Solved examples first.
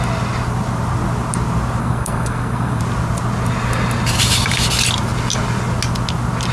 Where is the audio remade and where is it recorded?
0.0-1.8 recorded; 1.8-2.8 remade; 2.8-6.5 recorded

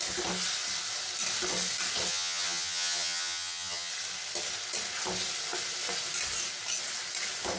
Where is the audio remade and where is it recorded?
0.0-2.1 recorded; 2.1-3.9 remade; 3.9-7.6 recorded

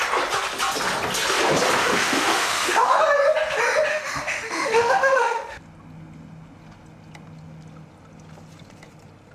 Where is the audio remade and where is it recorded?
0.0-1.8 recorded; 1.8-3.0 remade; 3.0-3.9 recorded; 3.9-5.6 remade; 5.6-9.3 recorded

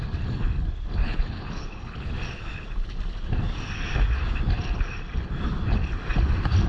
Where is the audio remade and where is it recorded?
0.0-1.0 recorded; 1.0-2.1 remade; 2.1-6.7 recorded

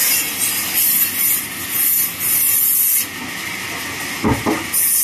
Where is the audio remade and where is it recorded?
0.0-5.0 recorded

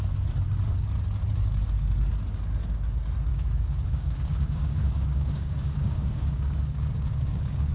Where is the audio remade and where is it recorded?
0.0-3.3 recorded; 3.3-7.7 remade